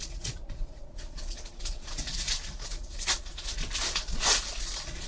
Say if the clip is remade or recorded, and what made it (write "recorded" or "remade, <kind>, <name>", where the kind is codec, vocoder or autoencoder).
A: remade, vocoder, Vocos